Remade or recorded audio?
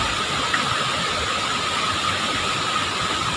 recorded